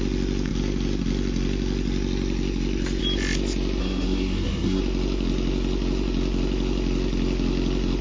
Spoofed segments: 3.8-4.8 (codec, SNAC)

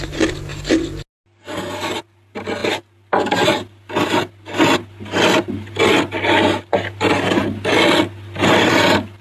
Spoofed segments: none

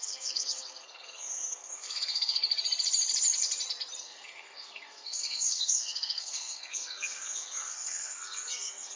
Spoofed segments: 0.0-2.4 (codec, SNAC); 4.0-9.0

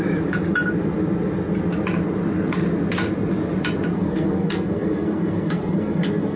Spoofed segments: 3.9-6.4 (codec, SNAC)

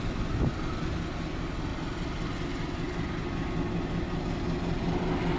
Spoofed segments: none